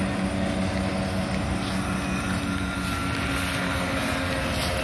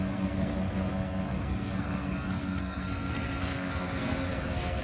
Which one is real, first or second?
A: first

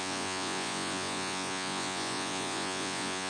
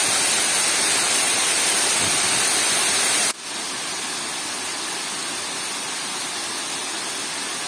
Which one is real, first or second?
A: second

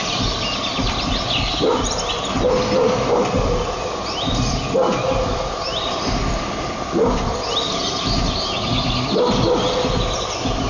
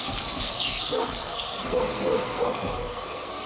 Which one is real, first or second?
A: first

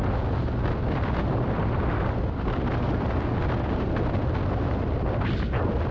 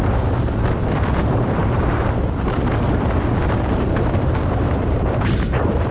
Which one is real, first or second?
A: first